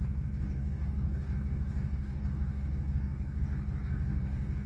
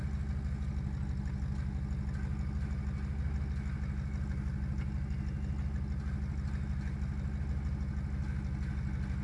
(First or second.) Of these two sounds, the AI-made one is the first